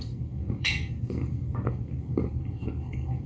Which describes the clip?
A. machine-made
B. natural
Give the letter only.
A